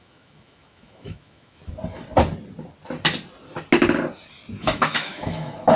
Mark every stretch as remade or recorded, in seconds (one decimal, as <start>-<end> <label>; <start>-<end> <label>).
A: 0.0-1.6 remade; 1.6-4.6 recorded; 4.6-5.8 remade